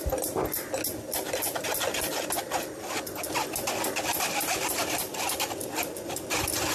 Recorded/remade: recorded